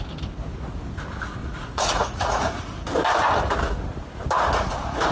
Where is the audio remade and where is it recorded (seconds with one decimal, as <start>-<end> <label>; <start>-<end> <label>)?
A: 0.0-1.4 recorded; 1.4-2.6 remade; 2.6-5.1 recorded

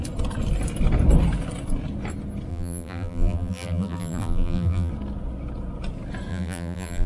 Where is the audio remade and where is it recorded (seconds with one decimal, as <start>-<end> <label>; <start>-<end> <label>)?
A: 0.0-2.5 recorded; 2.5-4.9 remade; 4.9-6.3 recorded; 6.3-7.1 remade

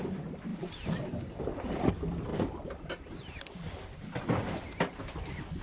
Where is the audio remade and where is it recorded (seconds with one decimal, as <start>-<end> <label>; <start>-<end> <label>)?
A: 0.0-0.5 recorded; 0.5-1.9 remade; 1.9-2.3 recorded; 2.3-5.0 remade; 5.0-5.6 recorded